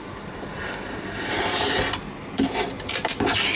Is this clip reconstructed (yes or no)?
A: no